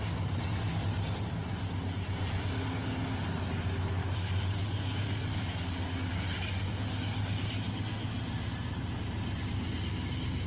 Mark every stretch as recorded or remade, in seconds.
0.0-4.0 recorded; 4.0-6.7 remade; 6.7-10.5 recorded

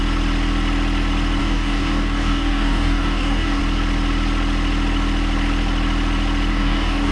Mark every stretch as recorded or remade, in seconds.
0.0-1.4 recorded; 1.4-3.6 remade; 3.6-6.5 recorded; 6.5-7.1 remade

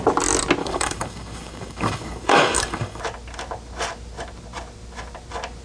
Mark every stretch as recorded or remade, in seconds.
0.0-0.6 recorded; 0.6-3.0 remade; 3.0-5.6 recorded

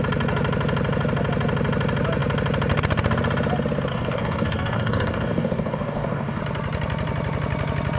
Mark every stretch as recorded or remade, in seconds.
0.0-3.9 recorded; 3.9-6.4 remade; 6.4-8.0 recorded